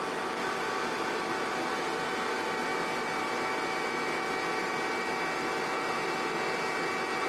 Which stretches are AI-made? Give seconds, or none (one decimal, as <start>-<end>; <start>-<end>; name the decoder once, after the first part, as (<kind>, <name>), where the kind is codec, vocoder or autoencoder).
none